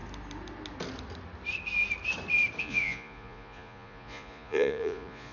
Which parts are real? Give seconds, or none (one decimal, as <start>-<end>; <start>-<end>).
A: 0.0-2.6